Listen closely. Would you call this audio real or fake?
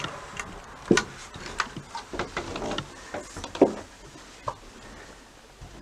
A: real